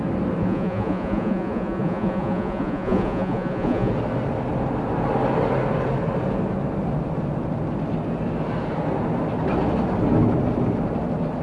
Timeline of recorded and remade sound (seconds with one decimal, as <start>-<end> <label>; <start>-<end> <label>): 0.0-0.4 recorded; 0.4-3.9 remade; 3.9-11.4 recorded